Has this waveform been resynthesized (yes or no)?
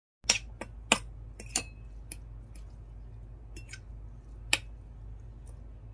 no